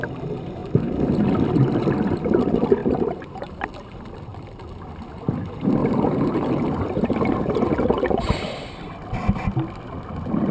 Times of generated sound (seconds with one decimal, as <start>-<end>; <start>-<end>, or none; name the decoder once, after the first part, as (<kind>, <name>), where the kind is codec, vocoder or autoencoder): 2.8-3.6 (vocoder, BigVGAN v2); 5.8-6.6